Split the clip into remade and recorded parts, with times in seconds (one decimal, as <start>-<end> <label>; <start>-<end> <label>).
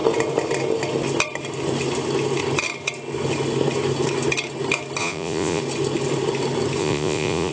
0.0-5.0 recorded; 5.0-5.6 remade; 5.6-6.8 recorded; 6.8-7.5 remade